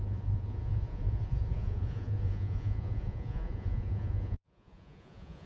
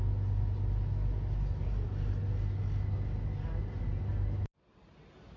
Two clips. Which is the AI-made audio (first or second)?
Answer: first